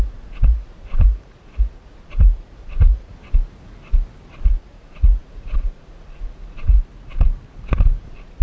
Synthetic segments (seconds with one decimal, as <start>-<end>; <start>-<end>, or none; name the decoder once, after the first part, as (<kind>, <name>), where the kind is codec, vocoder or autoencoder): 0.0-3.1 (vocoder, Vocos); 4.5-6.8; 8.0-8.4